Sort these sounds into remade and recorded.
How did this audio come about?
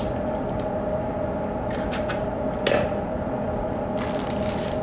recorded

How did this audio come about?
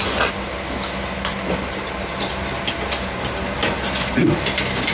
recorded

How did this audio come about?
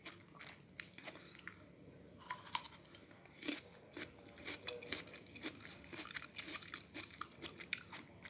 recorded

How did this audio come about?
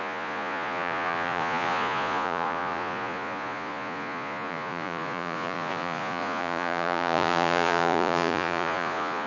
remade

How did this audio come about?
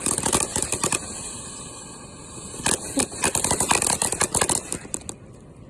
recorded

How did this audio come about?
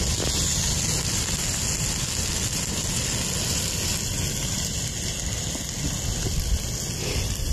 recorded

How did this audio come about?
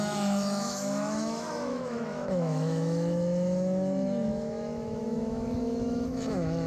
remade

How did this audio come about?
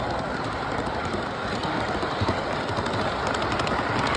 recorded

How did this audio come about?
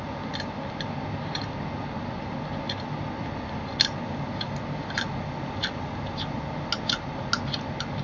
recorded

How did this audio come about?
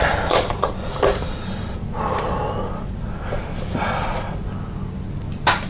recorded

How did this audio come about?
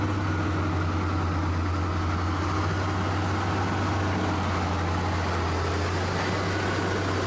recorded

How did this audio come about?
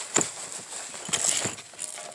recorded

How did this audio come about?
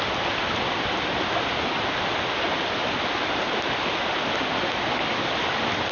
recorded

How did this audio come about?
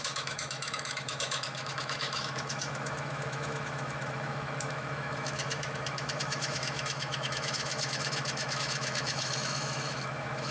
remade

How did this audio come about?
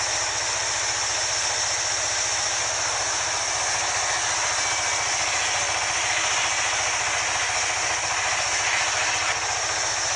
recorded